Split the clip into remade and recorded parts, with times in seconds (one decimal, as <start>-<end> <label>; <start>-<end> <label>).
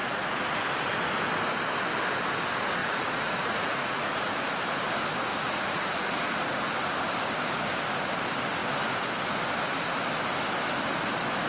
0.0-0.6 remade; 0.6-2.8 recorded; 2.8-4.1 remade; 4.1-5.3 recorded; 5.3-6.6 remade; 6.6-11.5 recorded